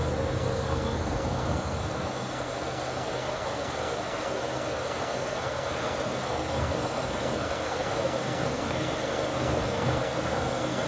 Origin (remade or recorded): remade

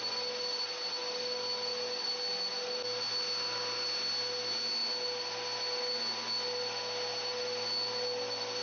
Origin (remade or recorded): recorded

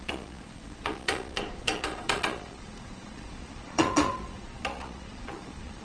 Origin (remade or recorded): remade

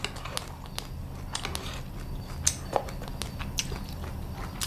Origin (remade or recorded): recorded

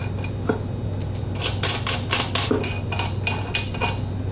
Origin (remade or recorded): recorded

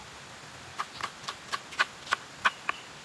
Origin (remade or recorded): recorded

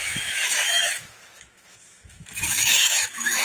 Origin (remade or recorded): remade